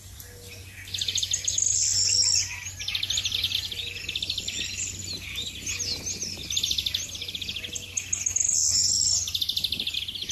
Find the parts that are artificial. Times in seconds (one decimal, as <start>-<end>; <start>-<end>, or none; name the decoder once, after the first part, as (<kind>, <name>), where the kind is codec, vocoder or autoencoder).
none